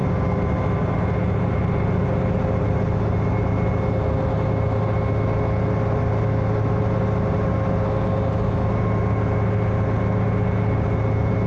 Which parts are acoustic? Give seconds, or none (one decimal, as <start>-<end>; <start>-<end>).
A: 0.0-11.5

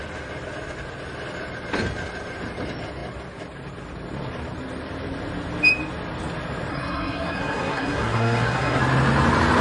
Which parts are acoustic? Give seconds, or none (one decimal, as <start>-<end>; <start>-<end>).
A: 0.0-6.7; 8.8-9.6

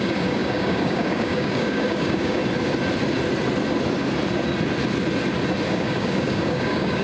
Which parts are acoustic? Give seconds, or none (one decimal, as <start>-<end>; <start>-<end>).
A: 2.4-5.7

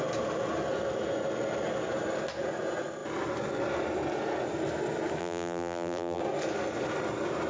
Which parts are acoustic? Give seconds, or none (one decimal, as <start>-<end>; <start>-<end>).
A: 0.0-5.2; 6.2-7.5